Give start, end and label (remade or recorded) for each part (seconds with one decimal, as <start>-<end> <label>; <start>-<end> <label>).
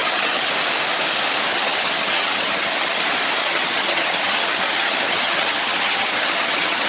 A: 0.0-0.5 remade; 0.5-1.5 recorded; 1.5-3.0 remade; 3.0-3.4 recorded; 3.4-6.9 remade